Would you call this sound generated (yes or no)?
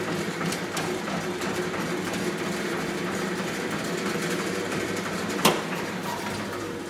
yes